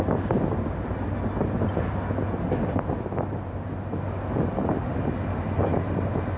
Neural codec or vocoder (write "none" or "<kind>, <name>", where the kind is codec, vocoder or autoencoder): none